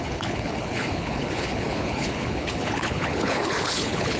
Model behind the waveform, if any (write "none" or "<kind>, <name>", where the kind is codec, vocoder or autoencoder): codec, HILCodec